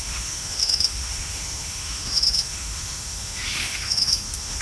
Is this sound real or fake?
fake